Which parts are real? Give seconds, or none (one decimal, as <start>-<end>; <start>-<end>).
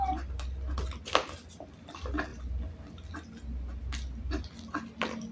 0.0-5.3